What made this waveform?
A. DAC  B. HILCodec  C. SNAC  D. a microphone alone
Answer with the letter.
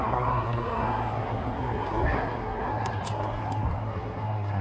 C